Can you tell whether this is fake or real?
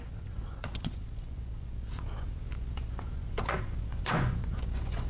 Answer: fake